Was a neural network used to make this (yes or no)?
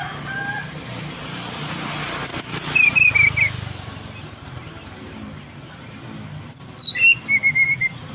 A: no